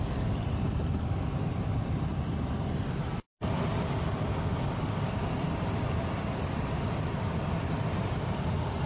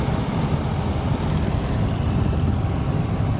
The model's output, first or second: first